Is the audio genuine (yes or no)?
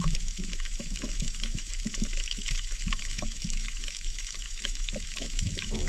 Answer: no